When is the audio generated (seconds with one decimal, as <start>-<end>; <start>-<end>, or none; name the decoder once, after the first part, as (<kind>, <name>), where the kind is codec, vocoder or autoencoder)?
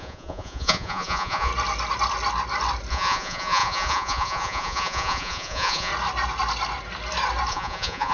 0.0-1.5 (vocoder, Vocos); 2.9-5.9; 7.5-8.1